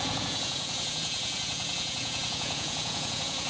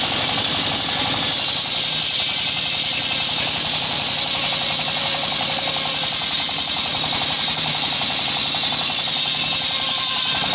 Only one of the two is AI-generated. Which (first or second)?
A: first